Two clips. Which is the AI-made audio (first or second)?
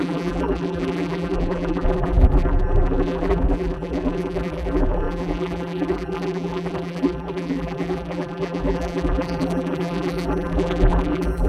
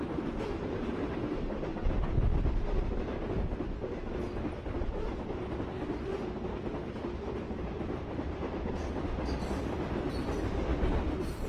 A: first